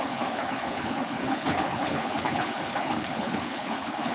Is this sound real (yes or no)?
no